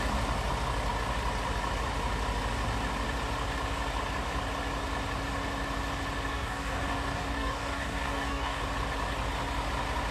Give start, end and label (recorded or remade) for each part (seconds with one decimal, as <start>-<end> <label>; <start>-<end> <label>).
0.0-6.3 recorded; 6.3-8.6 remade; 8.6-10.1 recorded